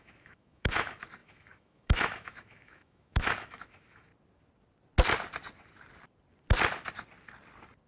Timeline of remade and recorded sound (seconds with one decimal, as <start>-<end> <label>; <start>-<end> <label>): 0.0-4.1 remade; 4.1-7.9 recorded